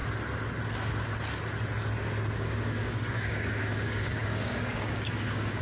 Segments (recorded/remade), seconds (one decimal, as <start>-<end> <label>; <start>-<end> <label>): 0.0-2.3 recorded; 2.3-5.6 remade